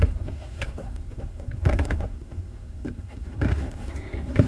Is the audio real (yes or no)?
no